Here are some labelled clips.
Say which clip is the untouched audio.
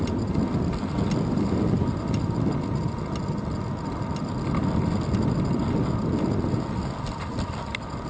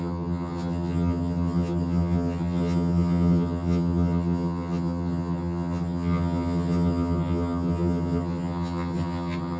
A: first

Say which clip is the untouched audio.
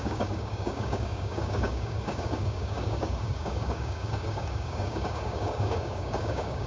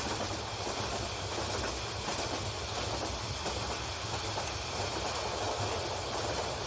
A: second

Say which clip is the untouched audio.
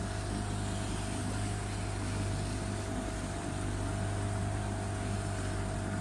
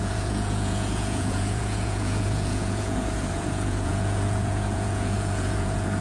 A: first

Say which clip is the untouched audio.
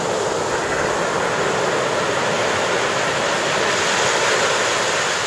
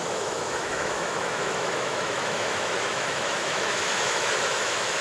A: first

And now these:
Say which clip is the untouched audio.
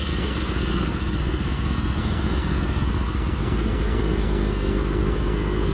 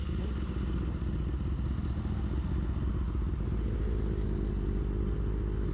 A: second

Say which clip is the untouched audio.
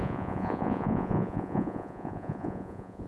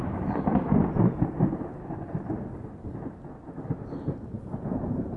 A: second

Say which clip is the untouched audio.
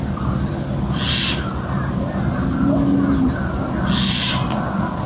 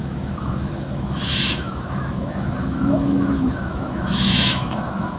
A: first